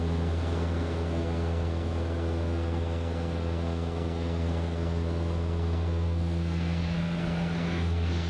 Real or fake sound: fake